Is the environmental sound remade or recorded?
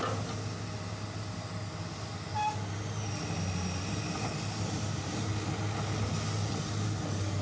recorded